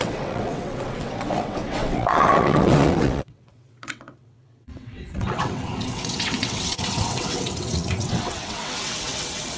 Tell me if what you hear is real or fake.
fake